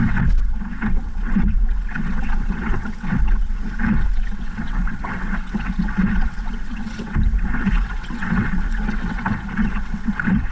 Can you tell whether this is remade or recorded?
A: remade